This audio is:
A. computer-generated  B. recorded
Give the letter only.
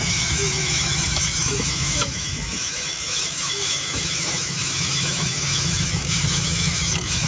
A